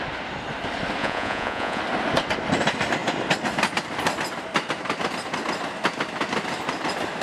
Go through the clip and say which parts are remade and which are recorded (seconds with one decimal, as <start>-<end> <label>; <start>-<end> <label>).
0.0-1.0 recorded; 1.0-1.8 remade; 1.8-7.2 recorded